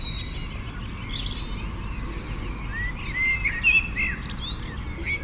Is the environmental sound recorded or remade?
recorded